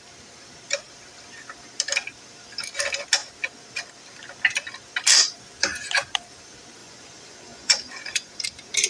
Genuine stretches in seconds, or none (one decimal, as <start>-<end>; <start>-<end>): 0.0-6.8; 8.3-8.9